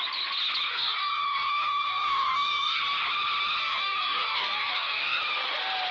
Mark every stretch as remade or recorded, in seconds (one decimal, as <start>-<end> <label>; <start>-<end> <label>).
0.0-0.7 recorded; 0.7-2.8 remade; 2.8-3.6 recorded; 3.6-5.2 remade; 5.2-5.9 recorded